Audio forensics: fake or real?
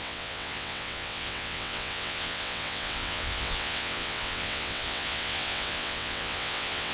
fake